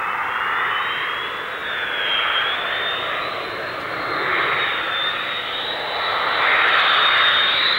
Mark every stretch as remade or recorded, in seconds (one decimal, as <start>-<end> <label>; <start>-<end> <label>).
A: 0.0-7.8 recorded